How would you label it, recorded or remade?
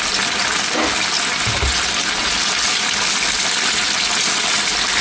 recorded